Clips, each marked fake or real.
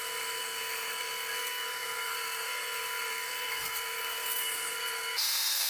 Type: fake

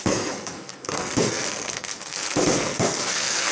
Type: fake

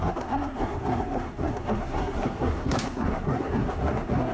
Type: fake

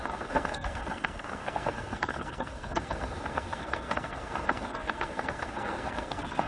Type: fake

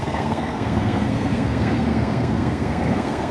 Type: fake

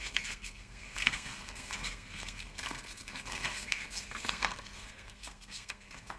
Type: fake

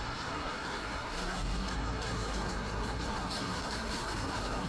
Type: fake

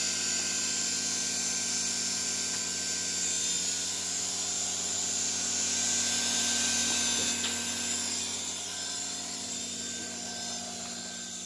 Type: real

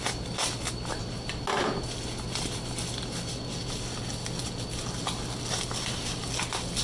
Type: real